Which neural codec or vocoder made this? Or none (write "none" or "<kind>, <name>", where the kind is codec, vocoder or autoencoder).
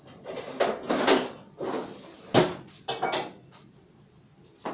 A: none